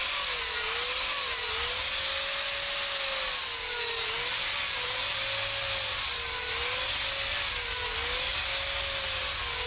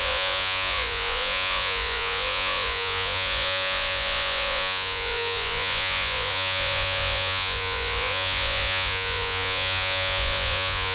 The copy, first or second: second